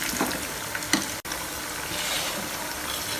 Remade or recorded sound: recorded